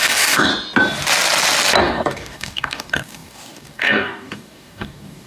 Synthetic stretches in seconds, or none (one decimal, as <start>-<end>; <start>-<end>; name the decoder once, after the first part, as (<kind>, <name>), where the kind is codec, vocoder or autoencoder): 0.0-0.5 (codec, DAC); 1.8-5.3